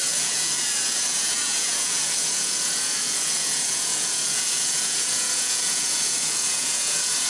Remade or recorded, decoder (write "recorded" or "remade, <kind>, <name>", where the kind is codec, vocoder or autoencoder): remade, vocoder, Vocos